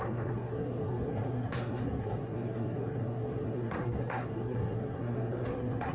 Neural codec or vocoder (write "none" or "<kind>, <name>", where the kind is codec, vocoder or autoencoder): codec, SNAC